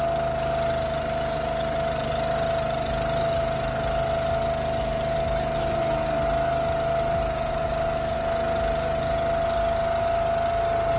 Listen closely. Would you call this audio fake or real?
real